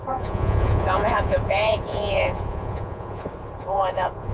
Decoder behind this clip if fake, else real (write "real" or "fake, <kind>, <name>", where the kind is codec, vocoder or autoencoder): fake, vocoder, Vocos